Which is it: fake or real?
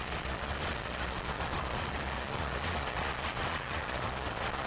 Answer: fake